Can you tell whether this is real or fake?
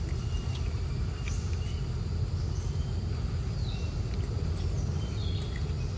real